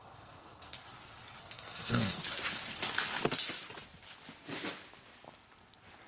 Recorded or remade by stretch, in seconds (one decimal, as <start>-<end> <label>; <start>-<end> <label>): 0.0-0.8 remade; 0.8-1.4 recorded; 1.4-2.2 remade; 2.2-6.1 recorded